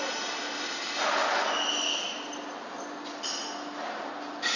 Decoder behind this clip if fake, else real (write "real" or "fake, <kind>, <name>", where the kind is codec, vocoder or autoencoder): real